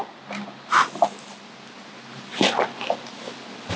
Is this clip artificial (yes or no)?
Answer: no